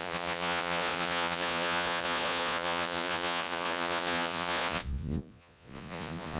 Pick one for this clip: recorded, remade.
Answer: remade